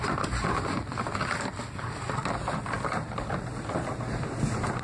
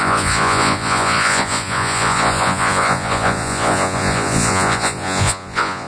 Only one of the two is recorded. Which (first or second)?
first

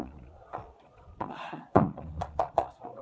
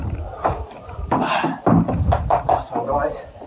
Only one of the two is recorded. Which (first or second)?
second